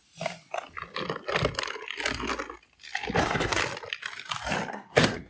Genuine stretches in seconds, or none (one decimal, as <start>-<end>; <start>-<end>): 0.0-3.2; 3.6-4.7